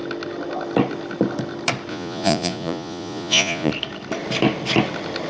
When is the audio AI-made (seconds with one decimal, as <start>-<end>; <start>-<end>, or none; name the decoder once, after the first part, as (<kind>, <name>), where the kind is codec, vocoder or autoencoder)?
1.9-3.7 (vocoder, Vocos)